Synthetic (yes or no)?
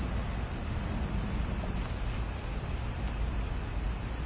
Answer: no